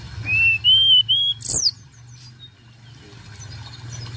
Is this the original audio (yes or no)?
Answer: yes